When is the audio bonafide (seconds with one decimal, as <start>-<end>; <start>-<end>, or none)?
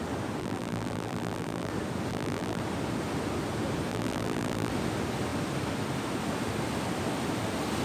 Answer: 0.0-0.4; 1.7-2.1; 2.6-3.9; 4.7-7.8